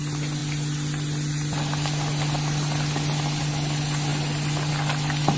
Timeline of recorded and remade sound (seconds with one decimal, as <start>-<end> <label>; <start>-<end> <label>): 0.0-5.4 recorded